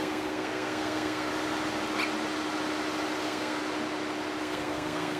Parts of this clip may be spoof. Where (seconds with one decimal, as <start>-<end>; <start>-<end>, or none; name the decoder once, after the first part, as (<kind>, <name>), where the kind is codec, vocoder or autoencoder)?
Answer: 0.0-1.3 (codec, SNAC); 3.2-3.6; 4.4-5.2